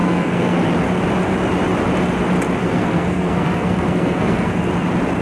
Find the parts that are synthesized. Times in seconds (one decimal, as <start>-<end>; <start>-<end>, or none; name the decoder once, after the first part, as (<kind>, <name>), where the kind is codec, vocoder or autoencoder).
0.0-0.7 (codec, SNAC); 2.6-4.6